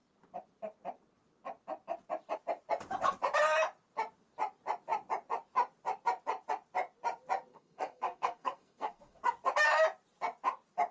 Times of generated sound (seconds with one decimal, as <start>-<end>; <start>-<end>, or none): 7.5-9.2